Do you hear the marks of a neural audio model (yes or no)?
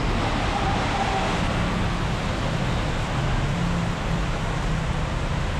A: no